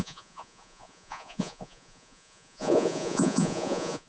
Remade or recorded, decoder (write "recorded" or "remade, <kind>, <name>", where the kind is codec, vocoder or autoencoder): remade, vocoder, Vocos